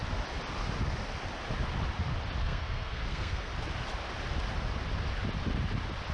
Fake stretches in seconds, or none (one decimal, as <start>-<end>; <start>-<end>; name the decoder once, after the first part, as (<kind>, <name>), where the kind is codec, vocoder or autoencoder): 2.4-3.5 (codec, SNAC)